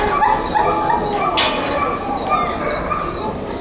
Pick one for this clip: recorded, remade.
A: recorded